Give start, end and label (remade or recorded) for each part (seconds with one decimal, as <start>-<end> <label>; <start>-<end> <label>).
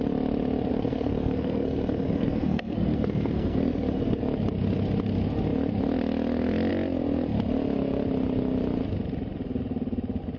0.0-0.7 recorded; 0.7-4.2 remade; 4.2-10.4 recorded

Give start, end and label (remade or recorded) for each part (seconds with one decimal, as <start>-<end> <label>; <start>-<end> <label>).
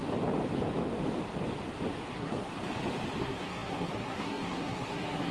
0.0-2.1 recorded; 2.1-2.5 remade; 2.5-3.2 recorded; 3.2-5.3 remade